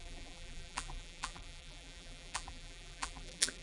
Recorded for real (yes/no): no